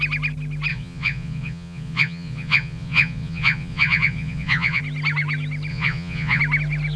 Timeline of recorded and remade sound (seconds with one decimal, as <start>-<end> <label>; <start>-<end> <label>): 0.0-0.7 recorded; 0.7-4.8 remade; 4.8-5.7 recorded; 5.7-6.4 remade; 6.4-7.0 recorded